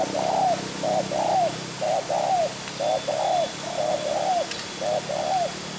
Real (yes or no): yes